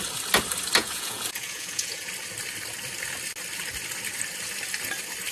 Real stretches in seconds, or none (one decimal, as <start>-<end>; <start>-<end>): 0.0-0.8; 2.1-5.3